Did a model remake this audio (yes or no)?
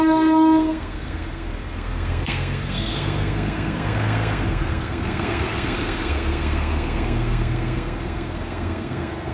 yes